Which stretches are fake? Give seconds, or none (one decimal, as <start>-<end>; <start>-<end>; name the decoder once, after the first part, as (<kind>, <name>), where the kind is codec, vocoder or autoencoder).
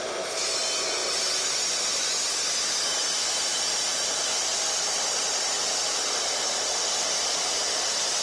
1.0-2.1 (vocoder, BigVGAN v2); 3.5-8.2